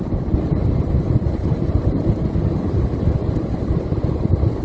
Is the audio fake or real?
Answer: real